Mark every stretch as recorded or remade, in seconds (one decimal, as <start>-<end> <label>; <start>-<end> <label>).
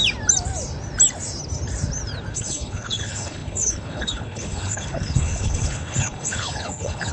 0.0-2.3 recorded; 2.3-7.1 remade